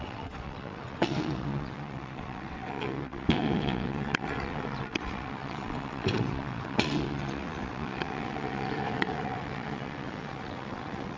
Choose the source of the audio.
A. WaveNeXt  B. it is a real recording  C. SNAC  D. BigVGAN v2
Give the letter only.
A